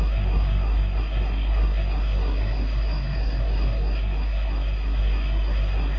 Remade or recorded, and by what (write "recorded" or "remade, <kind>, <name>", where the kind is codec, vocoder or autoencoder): remade, codec, SNAC